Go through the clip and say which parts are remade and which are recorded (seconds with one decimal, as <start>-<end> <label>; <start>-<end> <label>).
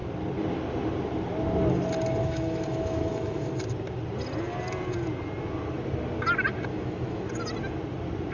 0.0-2.2 recorded; 2.2-3.5 remade; 3.5-6.7 recorded; 6.7-7.3 remade; 7.3-8.3 recorded